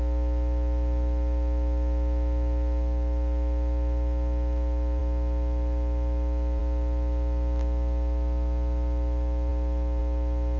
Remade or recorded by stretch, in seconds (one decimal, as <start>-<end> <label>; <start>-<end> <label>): 0.0-10.6 recorded